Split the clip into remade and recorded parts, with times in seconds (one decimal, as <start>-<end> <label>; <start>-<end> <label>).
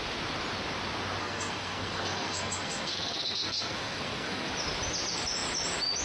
0.0-1.2 recorded; 1.2-4.5 remade; 4.5-6.0 recorded